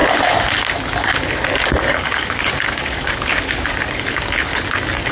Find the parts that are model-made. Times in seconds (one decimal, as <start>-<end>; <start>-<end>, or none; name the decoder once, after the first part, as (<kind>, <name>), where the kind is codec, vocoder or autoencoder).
1.8-4.5 (codec, DAC)